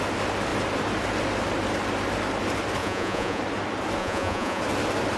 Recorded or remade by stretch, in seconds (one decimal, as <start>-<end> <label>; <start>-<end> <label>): 0.0-2.8 recorded; 2.8-3.4 remade; 3.4-4.0 recorded; 4.0-4.6 remade; 4.6-5.2 recorded